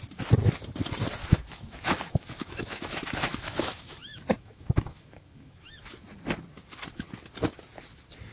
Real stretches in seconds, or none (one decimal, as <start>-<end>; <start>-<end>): 0.0-1.2; 5.7-8.3